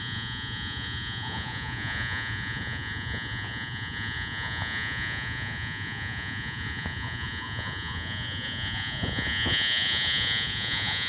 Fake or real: fake